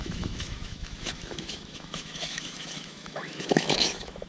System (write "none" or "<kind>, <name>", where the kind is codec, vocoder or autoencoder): autoencoder, DAC-VAE